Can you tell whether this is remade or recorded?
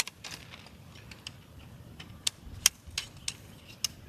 recorded